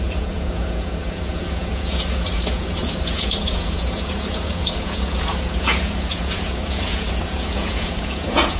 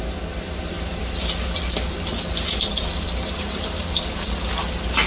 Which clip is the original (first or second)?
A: second